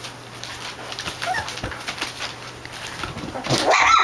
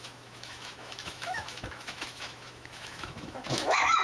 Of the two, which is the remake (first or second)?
second